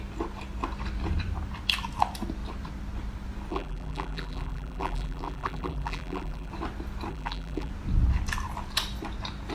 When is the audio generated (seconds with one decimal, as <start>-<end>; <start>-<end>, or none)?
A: 3.5-6.5; 7.1-7.7